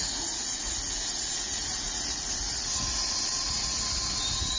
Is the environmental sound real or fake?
fake